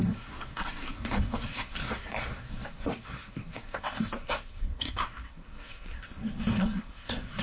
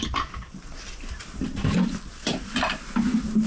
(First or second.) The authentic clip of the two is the second